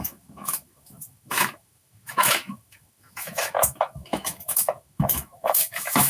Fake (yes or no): yes